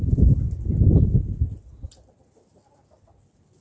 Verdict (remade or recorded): recorded